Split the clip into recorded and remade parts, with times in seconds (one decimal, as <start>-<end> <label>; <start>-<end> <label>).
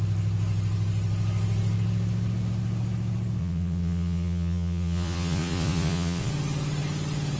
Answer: 0.0-3.4 recorded; 3.4-6.3 remade; 6.3-7.4 recorded